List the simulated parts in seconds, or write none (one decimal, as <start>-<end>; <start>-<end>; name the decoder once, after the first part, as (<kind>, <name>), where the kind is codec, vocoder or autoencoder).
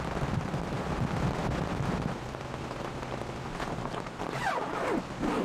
none